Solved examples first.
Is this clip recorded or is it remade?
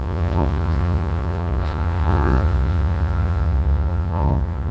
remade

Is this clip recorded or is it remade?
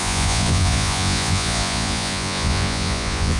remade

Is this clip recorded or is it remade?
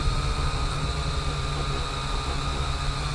recorded